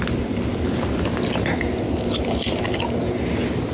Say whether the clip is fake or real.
real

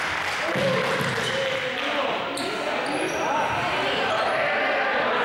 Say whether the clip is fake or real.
real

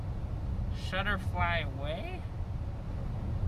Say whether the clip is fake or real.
real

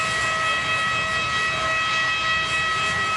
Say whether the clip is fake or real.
real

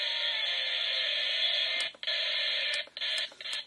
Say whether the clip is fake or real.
real